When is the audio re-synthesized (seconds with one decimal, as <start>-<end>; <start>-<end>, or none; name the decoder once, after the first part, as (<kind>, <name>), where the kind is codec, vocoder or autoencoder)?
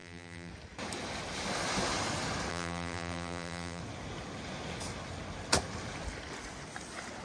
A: 0.0-0.5 (vocoder, BigVGAN v2); 2.5-3.8